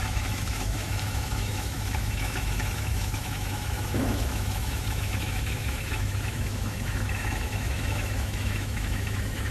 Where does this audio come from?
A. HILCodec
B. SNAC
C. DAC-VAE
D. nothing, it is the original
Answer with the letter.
C